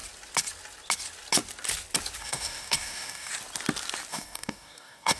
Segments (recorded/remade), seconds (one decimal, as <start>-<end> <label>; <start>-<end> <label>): 0.0-2.2 recorded; 2.2-3.3 remade; 3.3-4.1 recorded; 4.1-5.2 remade